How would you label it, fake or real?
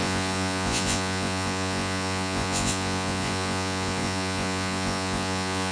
fake